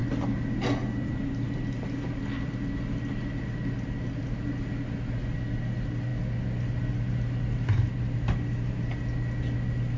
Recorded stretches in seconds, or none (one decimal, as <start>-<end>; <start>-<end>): 0.0-10.0